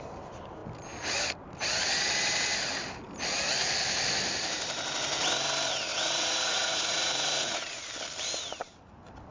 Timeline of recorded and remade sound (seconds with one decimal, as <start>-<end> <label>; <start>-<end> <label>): 0.0-5.9 recorded; 5.9-7.9 remade; 7.9-9.3 recorded